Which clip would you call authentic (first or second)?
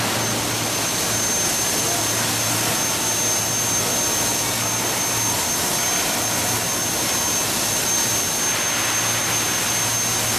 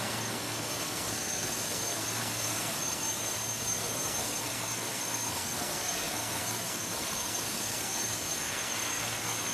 first